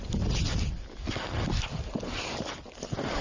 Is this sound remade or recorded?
recorded